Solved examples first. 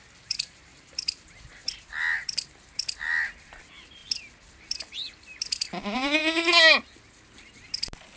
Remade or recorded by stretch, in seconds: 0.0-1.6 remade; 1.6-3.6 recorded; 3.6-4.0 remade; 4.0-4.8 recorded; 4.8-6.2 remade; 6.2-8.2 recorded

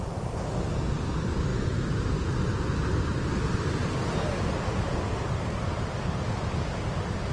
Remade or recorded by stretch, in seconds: 0.0-7.3 recorded

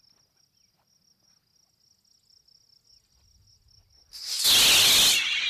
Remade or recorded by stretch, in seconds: 0.0-5.5 recorded

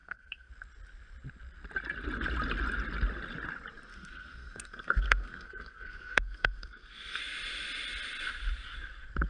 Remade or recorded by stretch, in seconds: 0.0-0.5 remade; 0.5-3.9 recorded; 3.9-7.2 remade; 7.2-9.3 recorded

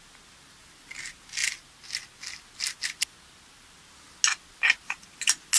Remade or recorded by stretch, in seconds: 0.0-5.6 recorded

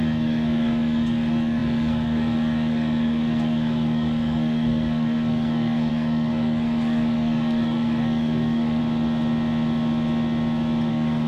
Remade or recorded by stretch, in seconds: 0.0-8.8 remade; 8.8-10.9 recorded; 10.9-11.3 remade